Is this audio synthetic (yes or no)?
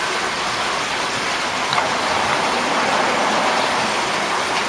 no